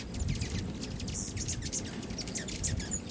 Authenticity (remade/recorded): recorded